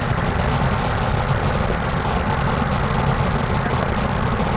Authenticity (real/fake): real